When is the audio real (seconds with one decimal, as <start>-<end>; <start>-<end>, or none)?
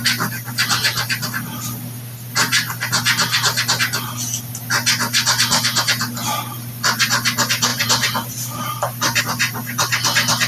0.0-7.7; 9.2-10.5